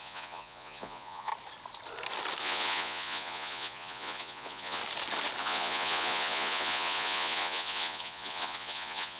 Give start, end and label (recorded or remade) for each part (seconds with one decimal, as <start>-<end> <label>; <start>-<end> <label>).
0.0-1.3 remade; 1.3-2.4 recorded; 2.4-4.8 remade; 4.8-5.4 recorded; 5.4-9.2 remade